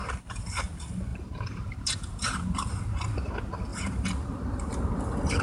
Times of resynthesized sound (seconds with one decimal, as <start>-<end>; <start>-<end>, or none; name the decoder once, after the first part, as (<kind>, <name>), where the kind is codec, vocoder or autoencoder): 0.0-0.6 (vocoder, BigVGAN v2); 1.1-3.3; 3.7-4.8